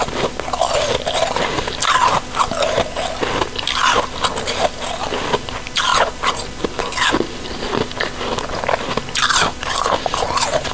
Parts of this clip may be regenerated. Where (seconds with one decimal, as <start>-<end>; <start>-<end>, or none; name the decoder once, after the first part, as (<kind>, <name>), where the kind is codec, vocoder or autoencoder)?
none